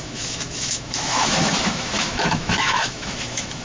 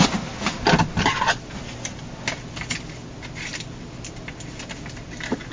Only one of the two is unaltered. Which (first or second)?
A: second